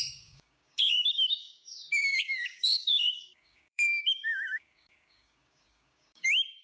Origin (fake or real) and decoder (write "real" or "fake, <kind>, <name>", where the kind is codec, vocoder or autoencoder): fake, codec, DAC